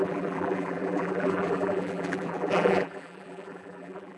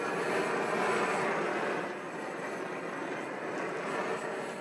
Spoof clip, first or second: first